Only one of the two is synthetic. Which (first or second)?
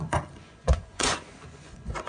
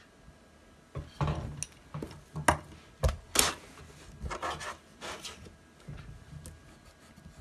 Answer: first